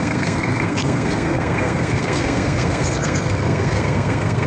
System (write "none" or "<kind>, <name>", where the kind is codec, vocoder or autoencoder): codec, SNAC